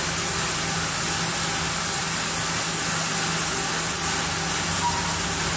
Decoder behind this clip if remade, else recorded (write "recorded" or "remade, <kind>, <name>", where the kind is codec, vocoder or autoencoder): recorded